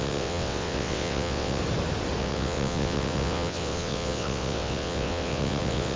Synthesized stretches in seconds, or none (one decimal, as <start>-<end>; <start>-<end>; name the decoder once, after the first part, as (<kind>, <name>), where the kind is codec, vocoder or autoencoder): 0.0-1.6 (vocoder, WaveNeXt); 2.2-6.0